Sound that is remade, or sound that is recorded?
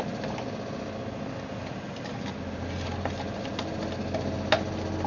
recorded